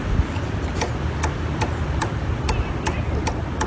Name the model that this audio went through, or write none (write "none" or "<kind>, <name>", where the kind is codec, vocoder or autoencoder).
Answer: none